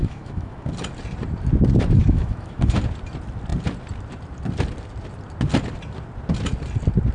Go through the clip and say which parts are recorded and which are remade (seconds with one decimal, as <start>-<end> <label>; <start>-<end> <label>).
0.0-0.7 remade; 0.7-2.0 recorded; 2.0-2.8 remade; 2.8-7.1 recorded